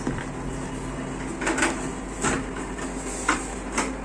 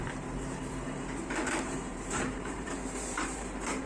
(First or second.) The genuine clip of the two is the first